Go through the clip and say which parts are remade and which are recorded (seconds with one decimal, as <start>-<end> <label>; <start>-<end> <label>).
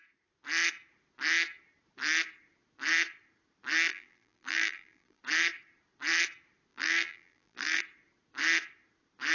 0.0-3.9 recorded; 3.9-5.2 remade; 5.2-6.7 recorded; 6.7-7.8 remade; 7.8-9.3 recorded